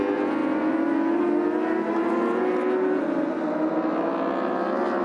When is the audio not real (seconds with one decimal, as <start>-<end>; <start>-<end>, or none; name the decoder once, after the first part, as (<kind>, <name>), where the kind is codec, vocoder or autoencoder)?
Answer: none